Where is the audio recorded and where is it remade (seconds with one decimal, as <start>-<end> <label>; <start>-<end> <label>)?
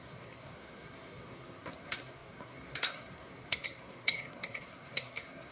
0.0-5.5 remade